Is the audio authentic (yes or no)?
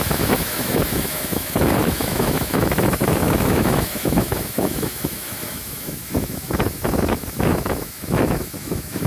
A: no